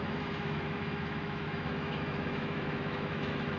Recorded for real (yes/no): no